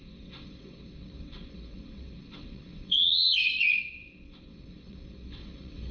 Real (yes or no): no